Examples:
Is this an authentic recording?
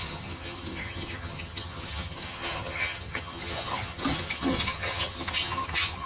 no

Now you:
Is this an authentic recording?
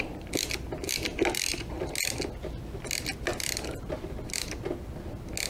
yes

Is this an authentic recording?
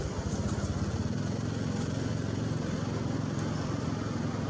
yes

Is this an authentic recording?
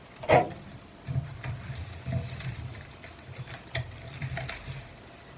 yes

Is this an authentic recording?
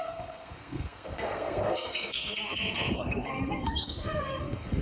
no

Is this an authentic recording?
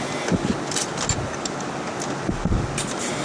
yes